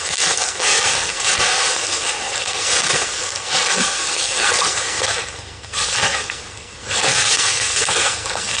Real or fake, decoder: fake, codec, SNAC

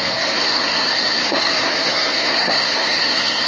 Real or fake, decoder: fake, codec, SNAC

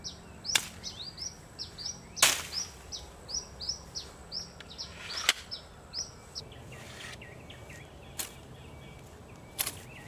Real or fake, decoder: real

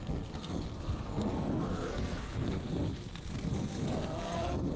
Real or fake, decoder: fake, codec, SNAC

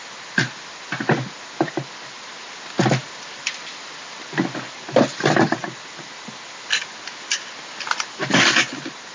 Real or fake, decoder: real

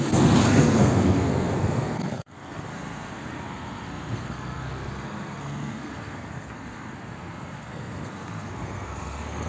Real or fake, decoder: fake, codec, SNAC